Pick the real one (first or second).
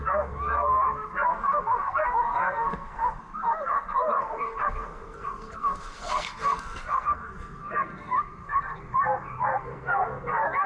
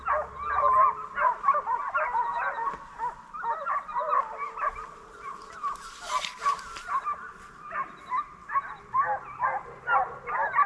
second